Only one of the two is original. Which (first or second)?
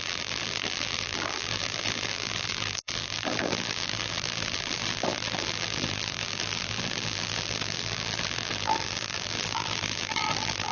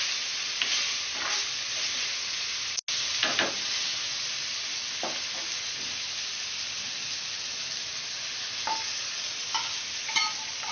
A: second